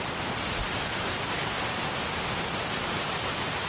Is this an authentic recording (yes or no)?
yes